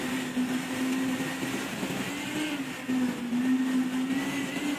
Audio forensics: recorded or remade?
recorded